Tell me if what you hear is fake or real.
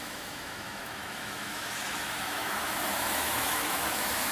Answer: fake